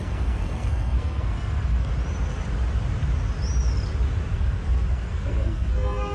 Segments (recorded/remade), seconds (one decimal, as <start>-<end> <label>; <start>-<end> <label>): 0.0-1.9 remade; 1.9-4.3 recorded; 4.3-6.1 remade